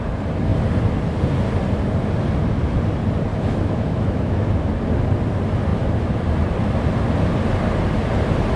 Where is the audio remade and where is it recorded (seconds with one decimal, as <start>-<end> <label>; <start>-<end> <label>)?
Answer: 0.0-3.3 recorded; 3.3-4.7 remade; 4.7-8.6 recorded